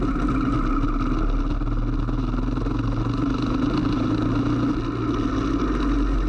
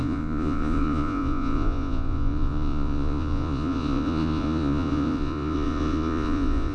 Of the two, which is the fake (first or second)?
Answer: second